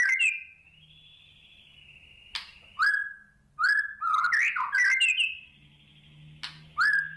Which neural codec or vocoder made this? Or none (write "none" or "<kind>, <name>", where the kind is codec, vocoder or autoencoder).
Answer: none